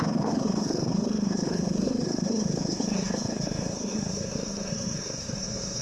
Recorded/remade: remade